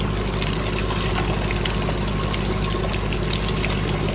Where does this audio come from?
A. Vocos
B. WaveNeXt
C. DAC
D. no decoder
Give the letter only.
D